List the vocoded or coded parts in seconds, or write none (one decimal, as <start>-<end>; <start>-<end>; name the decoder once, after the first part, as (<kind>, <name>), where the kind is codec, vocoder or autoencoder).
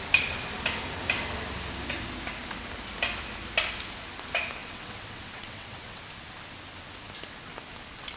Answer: 4.6-6.0 (vocoder, WaveNeXt)